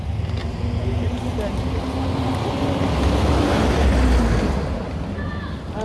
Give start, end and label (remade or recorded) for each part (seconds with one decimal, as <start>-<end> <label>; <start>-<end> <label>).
0.0-5.8 recorded

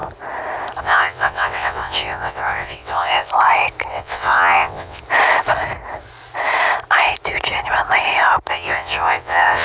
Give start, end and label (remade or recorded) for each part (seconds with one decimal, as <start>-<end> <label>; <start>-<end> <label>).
0.0-0.8 recorded; 0.8-3.3 remade; 3.3-3.9 recorded; 3.9-5.0 remade; 5.0-8.5 recorded; 8.5-9.6 remade

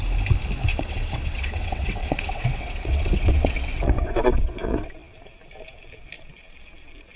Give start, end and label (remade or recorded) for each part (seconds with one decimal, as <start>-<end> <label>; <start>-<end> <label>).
0.0-0.7 recorded; 0.7-4.9 remade; 4.9-7.2 recorded

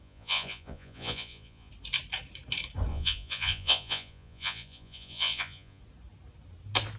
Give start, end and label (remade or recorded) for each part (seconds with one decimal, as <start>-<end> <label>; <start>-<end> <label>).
0.0-1.7 remade; 1.7-2.9 recorded; 2.9-5.8 remade; 5.8-7.0 recorded

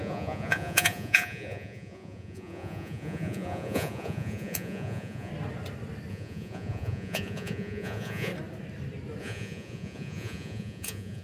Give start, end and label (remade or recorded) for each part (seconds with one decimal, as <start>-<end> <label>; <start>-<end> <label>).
0.0-5.3 remade; 5.3-6.1 recorded; 6.1-8.3 remade; 8.3-9.2 recorded; 9.2-11.2 remade

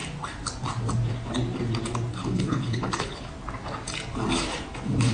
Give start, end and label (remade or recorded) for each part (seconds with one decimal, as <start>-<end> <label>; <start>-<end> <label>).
0.0-2.2 recorded; 2.2-3.3 remade; 3.3-5.1 recorded

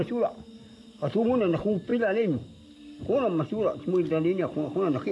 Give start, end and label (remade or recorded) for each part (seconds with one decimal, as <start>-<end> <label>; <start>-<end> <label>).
0.0-1.9 remade; 1.9-5.1 recorded